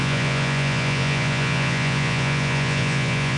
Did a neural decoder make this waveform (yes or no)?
yes